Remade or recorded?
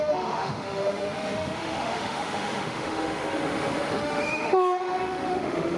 remade